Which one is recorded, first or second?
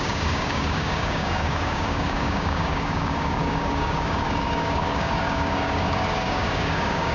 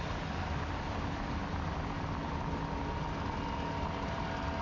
second